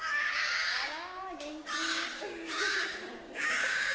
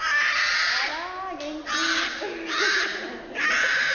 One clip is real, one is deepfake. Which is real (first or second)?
second